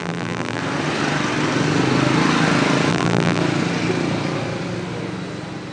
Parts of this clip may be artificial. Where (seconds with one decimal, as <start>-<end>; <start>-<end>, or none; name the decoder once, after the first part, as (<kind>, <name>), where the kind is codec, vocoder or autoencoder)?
0.0-0.6 (vocoder, BigVGAN v2); 2.9-3.4